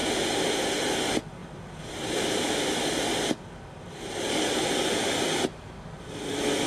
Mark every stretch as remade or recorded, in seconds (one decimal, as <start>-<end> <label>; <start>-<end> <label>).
0.0-6.7 recorded